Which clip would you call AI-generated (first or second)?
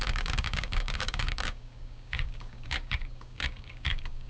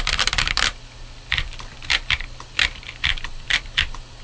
first